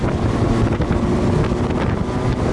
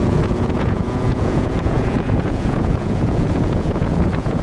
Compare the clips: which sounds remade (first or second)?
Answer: second